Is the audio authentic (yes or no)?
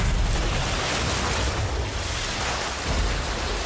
yes